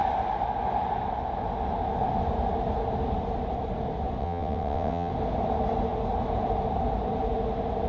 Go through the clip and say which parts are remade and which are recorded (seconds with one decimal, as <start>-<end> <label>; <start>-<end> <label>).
0.0-4.2 recorded; 4.2-5.1 remade; 5.1-7.9 recorded